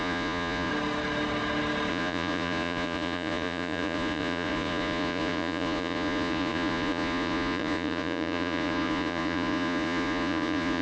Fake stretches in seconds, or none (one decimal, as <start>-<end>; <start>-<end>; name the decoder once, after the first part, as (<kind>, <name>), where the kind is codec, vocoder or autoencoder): 0.0-0.7 (vocoder, Vocos); 1.9-10.8